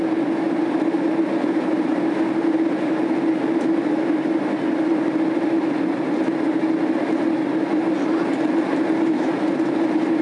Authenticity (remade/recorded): recorded